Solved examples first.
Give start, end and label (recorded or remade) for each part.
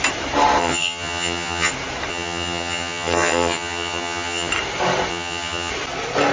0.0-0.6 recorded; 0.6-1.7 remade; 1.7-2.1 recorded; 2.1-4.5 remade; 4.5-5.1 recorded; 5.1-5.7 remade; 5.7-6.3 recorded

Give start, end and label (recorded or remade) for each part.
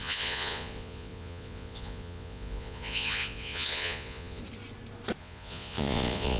0.0-4.4 remade; 4.4-5.2 recorded; 5.2-6.4 remade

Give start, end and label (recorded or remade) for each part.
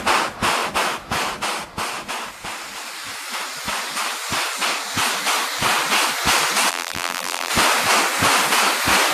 0.0-6.7 recorded; 6.7-7.5 remade; 7.5-9.1 recorded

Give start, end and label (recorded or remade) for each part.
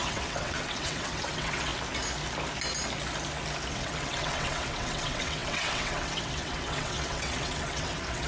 0.0-1.7 remade; 1.7-3.7 recorded; 3.7-8.3 remade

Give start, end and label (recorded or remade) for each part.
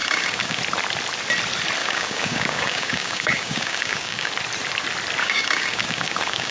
0.0-0.6 remade; 0.6-1.8 recorded; 1.8-4.3 remade; 4.3-5.2 recorded; 5.2-6.5 remade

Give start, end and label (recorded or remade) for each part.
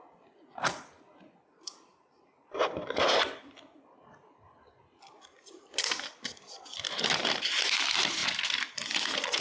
0.0-9.4 recorded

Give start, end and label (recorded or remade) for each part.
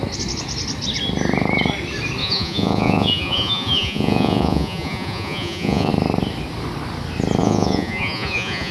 0.0-2.2 recorded; 2.2-5.9 remade; 5.9-7.4 recorded; 7.4-8.7 remade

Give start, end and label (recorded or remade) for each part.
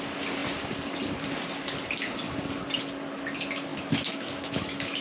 0.0-3.7 recorded; 3.7-5.0 remade